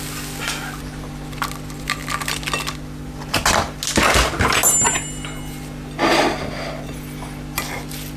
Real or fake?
real